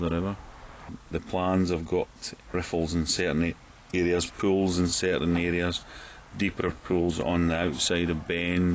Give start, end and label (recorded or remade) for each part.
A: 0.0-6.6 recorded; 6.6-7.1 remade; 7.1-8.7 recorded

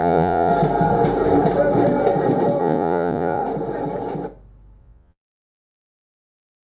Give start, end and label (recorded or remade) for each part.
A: 0.0-0.5 remade; 0.5-2.6 recorded; 2.6-3.4 remade; 3.4-4.8 recorded; 4.8-6.7 remade

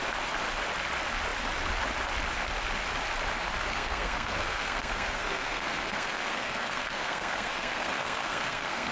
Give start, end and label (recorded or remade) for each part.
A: 0.0-3.7 recorded; 3.7-8.9 remade

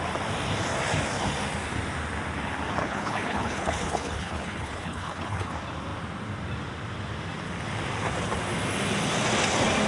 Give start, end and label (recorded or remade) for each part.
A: 0.0-2.8 recorded; 2.8-5.5 remade; 5.5-9.9 recorded

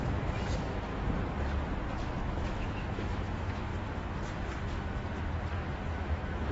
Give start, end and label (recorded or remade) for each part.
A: 0.0-0.9 remade; 0.9-2.2 recorded; 2.2-3.7 remade; 3.7-5.9 recorded; 5.9-6.5 remade

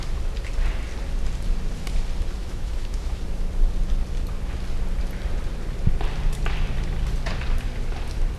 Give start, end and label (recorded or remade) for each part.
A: 0.0-2.4 recorded; 2.4-3.2 remade; 3.2-8.4 recorded

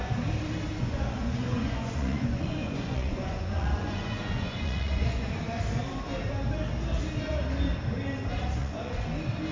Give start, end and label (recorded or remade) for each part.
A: 0.0-0.7 recorded; 0.7-5.3 remade; 5.3-8.6 recorded; 8.6-9.1 remade; 9.1-9.5 recorded